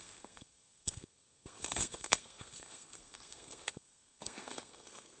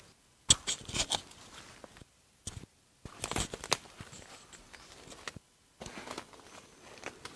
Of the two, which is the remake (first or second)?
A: first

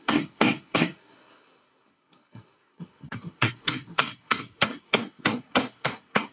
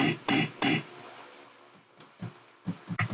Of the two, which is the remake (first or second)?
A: first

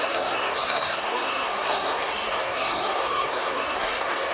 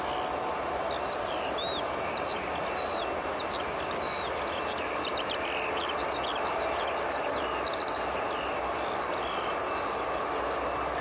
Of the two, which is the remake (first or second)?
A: first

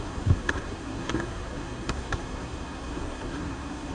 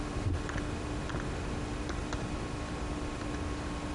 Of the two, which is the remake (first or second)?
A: first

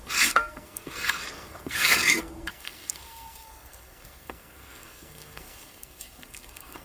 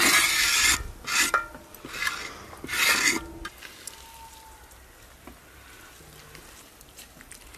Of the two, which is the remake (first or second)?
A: first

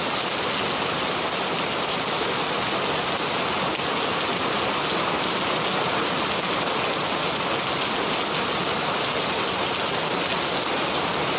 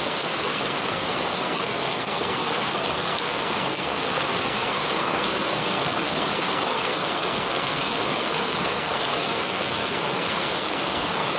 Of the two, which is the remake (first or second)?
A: second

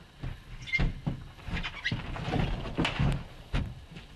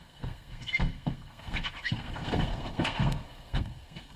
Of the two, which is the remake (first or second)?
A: second